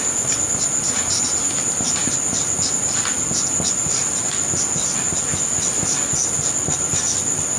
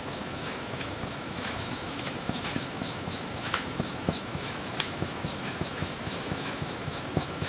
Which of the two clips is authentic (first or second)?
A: first